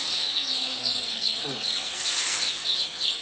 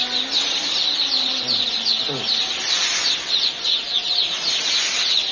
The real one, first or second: second